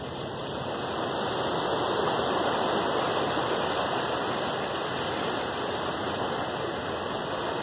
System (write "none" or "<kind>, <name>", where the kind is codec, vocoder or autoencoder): none